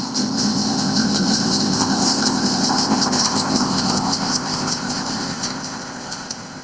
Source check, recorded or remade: remade